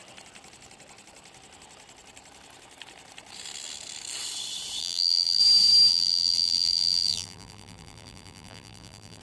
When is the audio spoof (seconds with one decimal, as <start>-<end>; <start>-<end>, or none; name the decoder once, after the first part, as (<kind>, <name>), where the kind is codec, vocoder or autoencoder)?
4.8-5.4 (vocoder, BigVGAN v2); 5.9-9.2